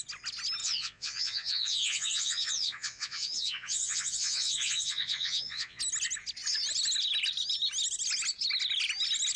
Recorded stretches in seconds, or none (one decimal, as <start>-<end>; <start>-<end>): 0.0-0.6; 5.8-9.4